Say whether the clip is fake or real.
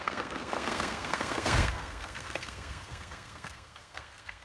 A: fake